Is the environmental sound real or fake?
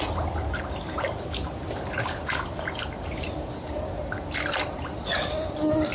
real